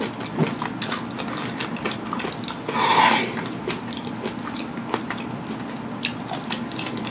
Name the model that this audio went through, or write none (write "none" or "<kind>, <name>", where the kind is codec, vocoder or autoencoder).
none